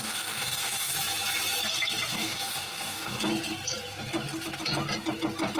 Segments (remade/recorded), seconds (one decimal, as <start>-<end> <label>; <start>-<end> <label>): 0.0-0.9 remade; 0.9-2.1 recorded; 2.1-3.3 remade; 3.3-5.6 recorded